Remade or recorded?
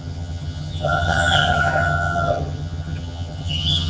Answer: remade